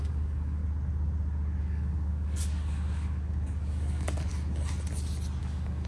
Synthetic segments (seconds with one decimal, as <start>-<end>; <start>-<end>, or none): 0.0-0.6; 1.6-4.3; 5.4-5.9